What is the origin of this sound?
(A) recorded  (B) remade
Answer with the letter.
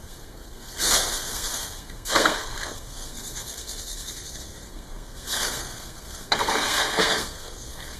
B